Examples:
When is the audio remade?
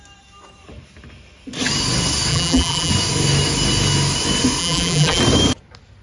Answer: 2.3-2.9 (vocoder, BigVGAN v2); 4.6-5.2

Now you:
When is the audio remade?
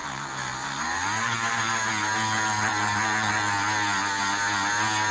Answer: 0.0-1.9 (vocoder, BigVGAN v2)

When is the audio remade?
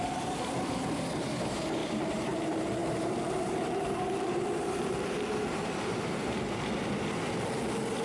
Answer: 1.8-2.4 (vocoder, BigVGAN v2); 2.8-6.4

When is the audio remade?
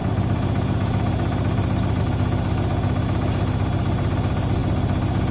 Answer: none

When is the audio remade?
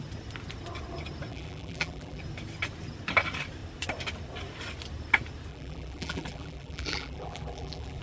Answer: 1.3-2.2 (vocoder, BigVGAN v2); 5.5-8.0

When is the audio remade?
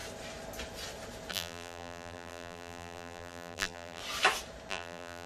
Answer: 1.3-4.0 (vocoder, BigVGAN v2); 4.7-5.3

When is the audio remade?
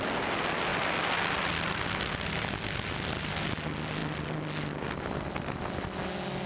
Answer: none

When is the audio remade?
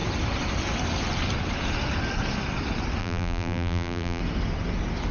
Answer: 3.0-4.2 (vocoder, BigVGAN v2)